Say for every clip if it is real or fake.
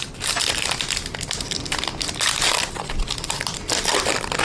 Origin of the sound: real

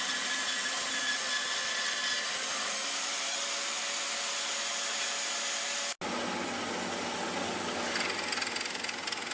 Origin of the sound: real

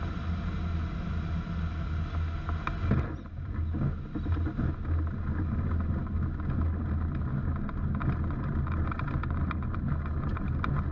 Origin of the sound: real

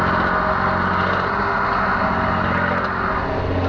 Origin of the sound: real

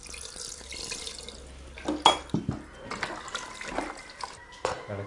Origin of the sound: real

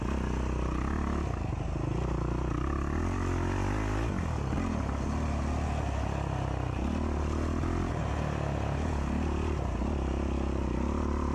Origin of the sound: real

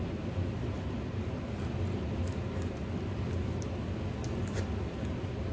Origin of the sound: real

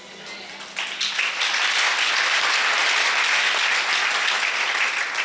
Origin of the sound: real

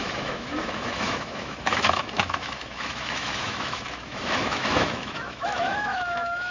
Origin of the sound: fake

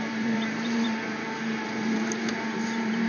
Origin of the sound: fake